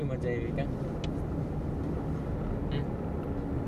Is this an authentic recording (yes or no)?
yes